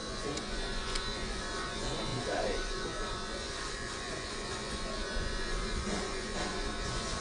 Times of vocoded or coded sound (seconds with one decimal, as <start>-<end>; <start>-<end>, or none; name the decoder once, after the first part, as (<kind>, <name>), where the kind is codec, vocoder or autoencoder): 0.0-7.2 (vocoder, Vocos)